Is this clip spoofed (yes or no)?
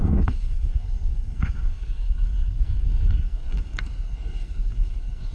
yes